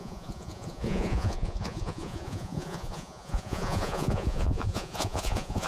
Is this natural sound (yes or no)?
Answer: no